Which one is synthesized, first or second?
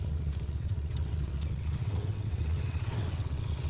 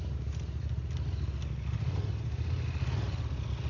first